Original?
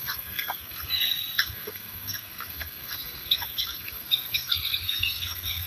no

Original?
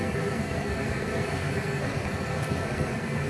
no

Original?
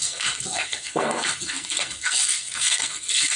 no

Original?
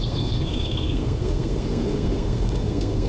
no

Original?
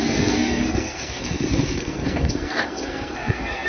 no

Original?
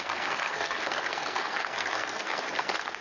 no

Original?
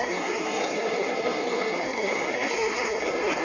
no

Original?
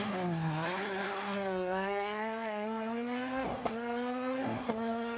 no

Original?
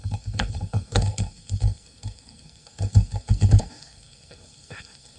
no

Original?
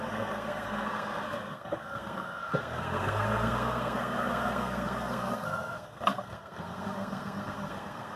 no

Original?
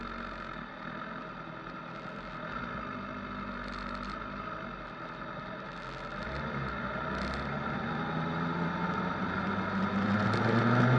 yes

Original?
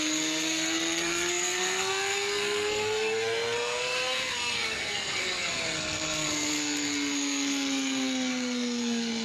no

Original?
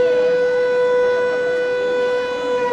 yes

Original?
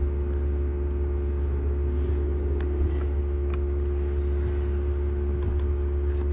yes